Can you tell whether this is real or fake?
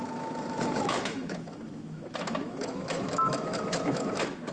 fake